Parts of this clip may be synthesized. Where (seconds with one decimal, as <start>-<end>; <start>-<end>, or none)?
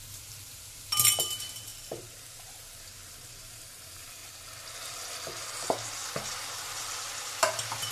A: 0.0-4.2